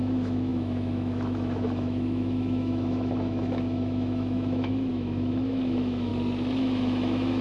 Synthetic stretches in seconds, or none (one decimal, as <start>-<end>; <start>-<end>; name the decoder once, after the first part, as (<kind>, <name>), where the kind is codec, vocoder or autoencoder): 0.0-6.1 (autoencoder, DAC-VAE); 6.6-7.4